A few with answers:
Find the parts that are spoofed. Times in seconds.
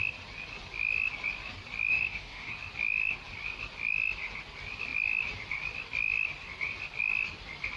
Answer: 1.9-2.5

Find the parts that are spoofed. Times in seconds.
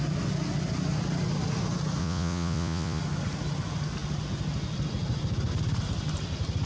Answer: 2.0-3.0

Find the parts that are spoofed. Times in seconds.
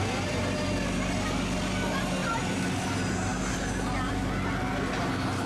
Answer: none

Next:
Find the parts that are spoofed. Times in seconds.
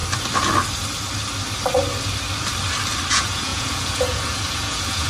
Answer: 3.1-5.1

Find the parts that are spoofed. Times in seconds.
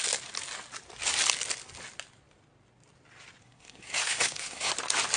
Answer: 3.4-4.7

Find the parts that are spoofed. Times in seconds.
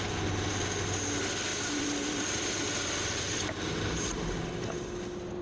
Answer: 1.5-4.5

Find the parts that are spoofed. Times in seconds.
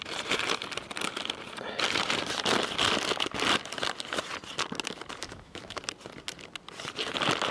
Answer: 5.2-5.8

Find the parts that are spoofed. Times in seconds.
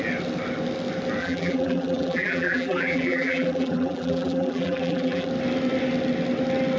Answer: 1.2-5.3